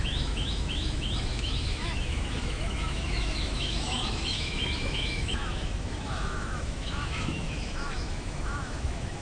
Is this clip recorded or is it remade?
remade